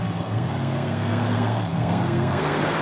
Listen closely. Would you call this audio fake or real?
fake